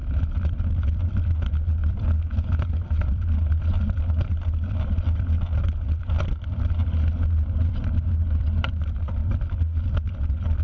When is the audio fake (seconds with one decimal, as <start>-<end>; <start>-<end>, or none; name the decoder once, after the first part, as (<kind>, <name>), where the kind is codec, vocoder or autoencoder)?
0.5-10.6 (vocoder, BigVGAN v2)